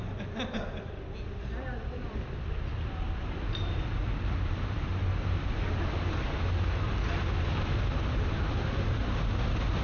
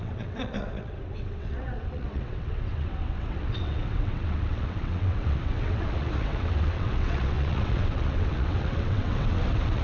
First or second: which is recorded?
first